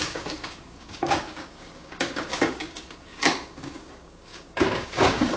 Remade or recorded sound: remade